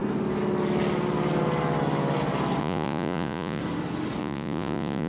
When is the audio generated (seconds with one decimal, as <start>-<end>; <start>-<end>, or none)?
2.6-3.6; 4.2-5.1